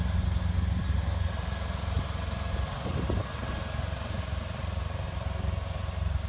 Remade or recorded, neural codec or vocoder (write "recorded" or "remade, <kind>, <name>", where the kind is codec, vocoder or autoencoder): recorded